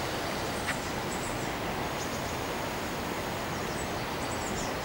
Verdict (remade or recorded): recorded